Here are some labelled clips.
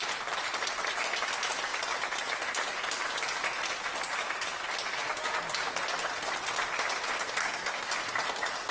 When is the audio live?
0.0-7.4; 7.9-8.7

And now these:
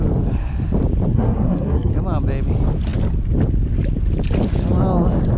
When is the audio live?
0.0-1.1; 1.9-5.4

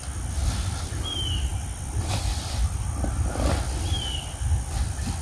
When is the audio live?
0.0-5.2